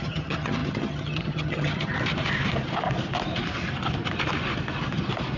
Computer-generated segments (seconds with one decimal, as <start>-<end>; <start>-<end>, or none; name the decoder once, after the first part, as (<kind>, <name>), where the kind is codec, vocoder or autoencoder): 0.0-1.9 (vocoder, HiFi-GAN)